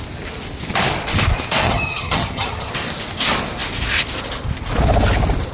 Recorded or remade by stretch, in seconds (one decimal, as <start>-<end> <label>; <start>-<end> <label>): 0.0-1.6 recorded; 1.6-2.7 remade; 2.7-5.5 recorded